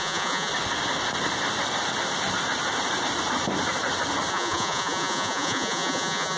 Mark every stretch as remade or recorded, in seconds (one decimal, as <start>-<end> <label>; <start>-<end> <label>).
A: 0.0-0.5 remade; 0.5-4.3 recorded; 4.3-6.4 remade